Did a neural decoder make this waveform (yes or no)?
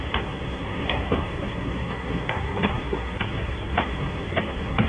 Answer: yes